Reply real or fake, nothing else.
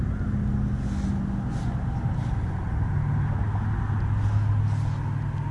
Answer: real